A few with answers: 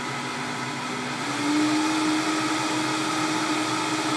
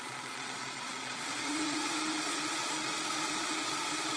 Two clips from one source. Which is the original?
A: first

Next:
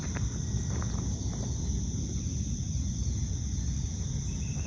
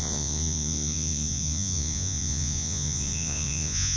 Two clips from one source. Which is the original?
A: first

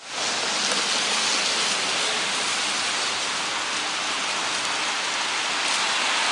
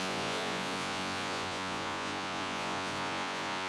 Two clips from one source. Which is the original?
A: first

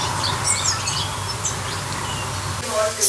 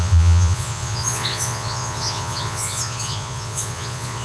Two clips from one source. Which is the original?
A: first